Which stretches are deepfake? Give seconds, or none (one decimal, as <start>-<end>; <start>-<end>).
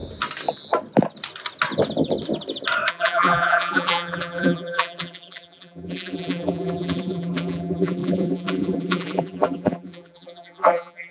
2.9-11.1